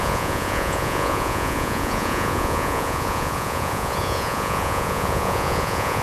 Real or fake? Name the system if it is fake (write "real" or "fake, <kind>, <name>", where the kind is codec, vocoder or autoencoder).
fake, vocoder, Vocos